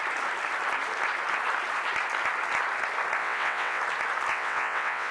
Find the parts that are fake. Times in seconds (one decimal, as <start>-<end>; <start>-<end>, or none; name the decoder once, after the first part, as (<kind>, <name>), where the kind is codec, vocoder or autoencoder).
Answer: 3.2-3.8 (vocoder, WaveNeXt); 4.3-5.1